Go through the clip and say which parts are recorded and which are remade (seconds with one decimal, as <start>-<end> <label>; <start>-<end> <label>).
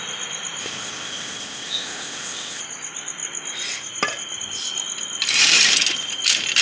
0.0-0.6 recorded; 0.6-2.6 remade; 2.6-6.6 recorded